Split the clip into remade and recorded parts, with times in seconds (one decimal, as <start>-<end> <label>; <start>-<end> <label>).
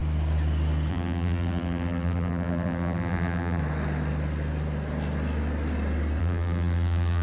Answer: 0.0-0.9 recorded; 0.9-3.6 remade; 3.6-6.2 recorded; 6.2-7.2 remade